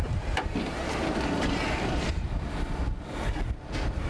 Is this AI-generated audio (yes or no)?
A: no